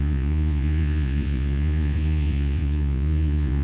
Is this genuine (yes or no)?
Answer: no